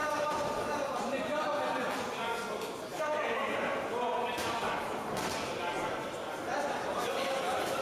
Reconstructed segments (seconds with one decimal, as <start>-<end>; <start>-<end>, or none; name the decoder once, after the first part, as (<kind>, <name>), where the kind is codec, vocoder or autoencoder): 0.0-2.4 (vocoder, BigVGAN v2)